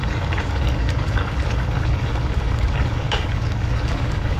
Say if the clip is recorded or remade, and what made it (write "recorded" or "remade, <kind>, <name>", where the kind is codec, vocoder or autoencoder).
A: remade, codec, DAC